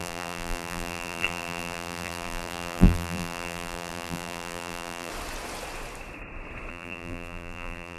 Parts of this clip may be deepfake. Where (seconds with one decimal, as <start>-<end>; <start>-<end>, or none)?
0.0-5.1; 6.7-8.0